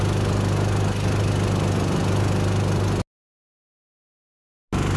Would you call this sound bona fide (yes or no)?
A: yes